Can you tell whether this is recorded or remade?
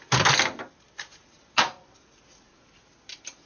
recorded